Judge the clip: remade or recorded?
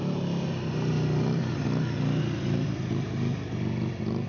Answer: recorded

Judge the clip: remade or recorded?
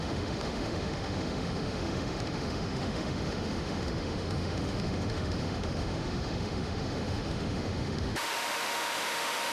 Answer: remade